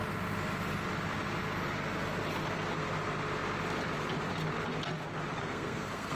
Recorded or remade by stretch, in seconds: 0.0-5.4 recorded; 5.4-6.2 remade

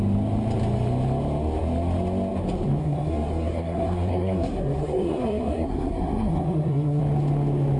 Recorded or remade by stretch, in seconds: 0.0-2.8 recorded; 2.8-7.0 remade; 7.0-7.8 recorded

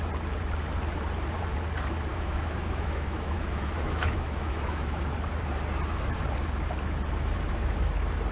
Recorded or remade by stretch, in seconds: 0.0-2.1 recorded; 2.1-5.0 remade; 5.0-8.3 recorded

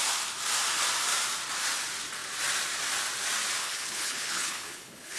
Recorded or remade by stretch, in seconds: 0.0-3.6 recorded; 3.6-5.2 remade

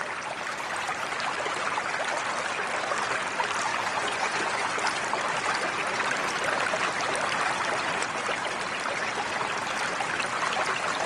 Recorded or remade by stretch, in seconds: 0.0-3.7 recorded; 3.7-4.7 remade; 4.7-11.1 recorded

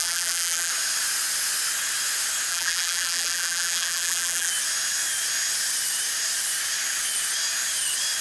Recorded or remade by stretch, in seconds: 0.0-0.7 remade; 0.7-2.5 recorded; 2.5-4.5 remade; 4.5-8.2 recorded